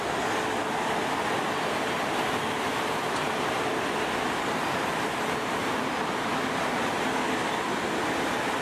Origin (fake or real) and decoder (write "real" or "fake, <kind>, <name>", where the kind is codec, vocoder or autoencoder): real